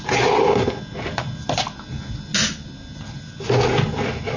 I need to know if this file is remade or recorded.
recorded